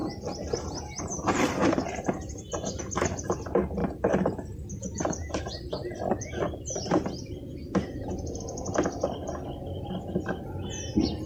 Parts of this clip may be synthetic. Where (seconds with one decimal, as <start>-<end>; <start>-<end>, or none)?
0.0-2.8

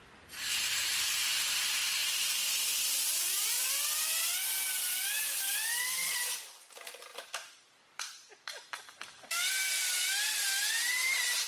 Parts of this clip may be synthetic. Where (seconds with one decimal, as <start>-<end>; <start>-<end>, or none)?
2.0-6.2; 7.1-11.1

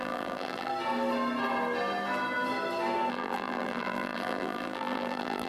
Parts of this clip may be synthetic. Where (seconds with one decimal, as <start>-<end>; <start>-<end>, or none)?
0.0-0.7; 3.1-5.5